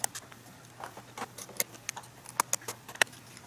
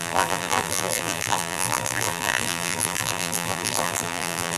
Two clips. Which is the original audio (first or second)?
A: first